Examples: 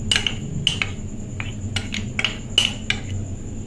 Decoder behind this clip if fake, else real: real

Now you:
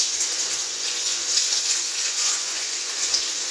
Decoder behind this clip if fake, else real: fake, vocoder, Vocos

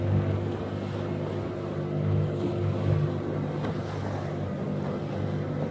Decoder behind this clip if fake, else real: real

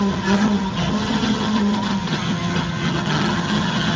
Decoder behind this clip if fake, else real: fake, vocoder, HiFi-GAN